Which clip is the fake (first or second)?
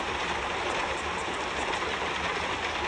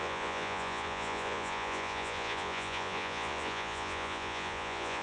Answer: second